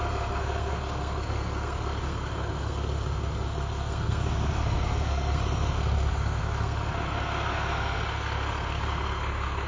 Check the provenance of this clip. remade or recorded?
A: remade